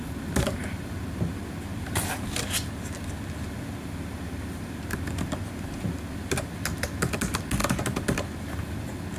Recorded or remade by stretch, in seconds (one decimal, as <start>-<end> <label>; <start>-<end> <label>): 0.0-9.2 recorded